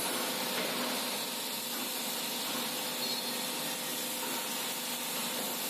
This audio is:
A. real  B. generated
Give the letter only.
A